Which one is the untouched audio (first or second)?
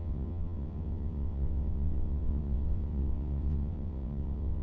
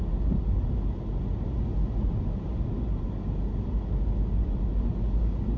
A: second